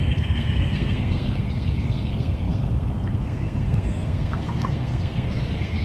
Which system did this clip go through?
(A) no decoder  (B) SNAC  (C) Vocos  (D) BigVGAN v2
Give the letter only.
B